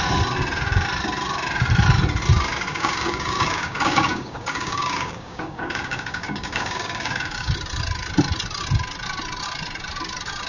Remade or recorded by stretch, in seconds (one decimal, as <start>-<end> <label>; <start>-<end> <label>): 0.0-2.7 recorded; 2.7-7.5 remade; 7.5-10.5 recorded

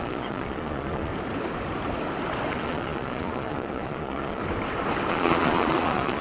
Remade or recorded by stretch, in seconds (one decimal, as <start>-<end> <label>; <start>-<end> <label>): 0.0-1.1 remade; 1.1-2.5 recorded; 2.5-4.4 remade; 4.4-5.1 recorded; 5.1-6.2 remade

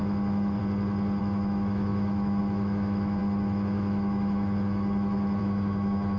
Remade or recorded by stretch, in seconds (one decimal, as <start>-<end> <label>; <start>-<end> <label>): 0.0-0.6 remade; 0.6-1.2 recorded; 1.2-6.2 remade

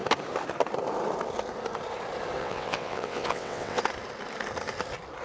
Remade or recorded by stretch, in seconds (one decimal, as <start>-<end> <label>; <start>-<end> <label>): 0.0-2.4 recorded; 2.4-3.8 remade; 3.8-5.2 recorded

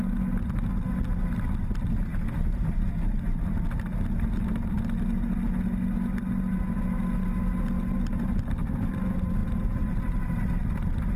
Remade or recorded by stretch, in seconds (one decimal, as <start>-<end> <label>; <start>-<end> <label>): 0.0-2.1 recorded; 2.1-3.4 remade; 3.4-9.4 recorded; 9.4-10.0 remade; 10.0-11.2 recorded

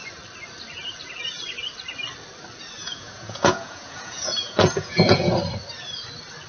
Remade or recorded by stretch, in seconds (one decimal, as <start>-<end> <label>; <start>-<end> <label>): 0.0-2.8 recorded; 2.8-5.3 remade; 5.3-6.5 recorded

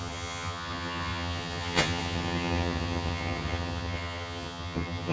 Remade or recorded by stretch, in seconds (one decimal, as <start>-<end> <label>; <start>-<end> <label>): 0.0-5.1 remade